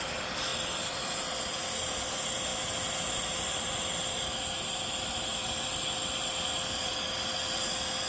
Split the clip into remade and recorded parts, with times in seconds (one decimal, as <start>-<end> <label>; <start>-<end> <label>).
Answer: 0.0-0.5 recorded; 0.5-1.3 remade; 1.3-8.1 recorded

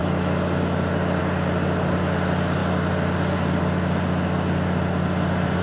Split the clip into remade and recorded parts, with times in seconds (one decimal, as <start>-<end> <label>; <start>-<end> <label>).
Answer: 0.0-5.6 recorded

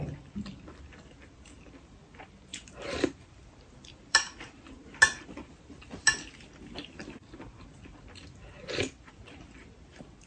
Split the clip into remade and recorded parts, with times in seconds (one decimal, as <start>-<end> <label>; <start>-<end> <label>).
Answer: 0.0-2.5 recorded; 2.5-4.7 remade; 4.7-10.3 recorded

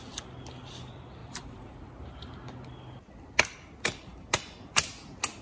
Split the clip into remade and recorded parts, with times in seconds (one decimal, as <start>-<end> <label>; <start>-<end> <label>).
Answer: 0.0-1.2 recorded; 1.2-2.3 remade; 2.3-5.4 recorded

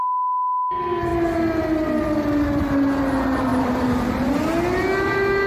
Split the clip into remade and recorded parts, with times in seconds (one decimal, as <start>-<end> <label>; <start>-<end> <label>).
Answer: 0.0-3.5 recorded; 3.5-4.4 remade; 4.4-5.5 recorded